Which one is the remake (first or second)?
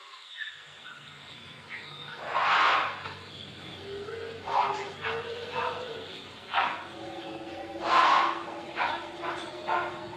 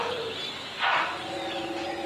first